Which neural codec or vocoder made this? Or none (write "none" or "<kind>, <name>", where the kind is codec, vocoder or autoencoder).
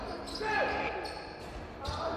none